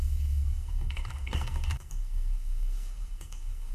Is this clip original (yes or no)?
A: no